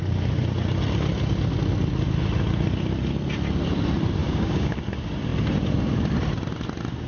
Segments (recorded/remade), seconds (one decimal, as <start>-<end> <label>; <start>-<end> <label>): 0.0-4.2 recorded; 4.2-4.8 remade; 4.8-7.1 recorded